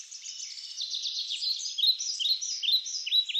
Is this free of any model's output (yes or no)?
yes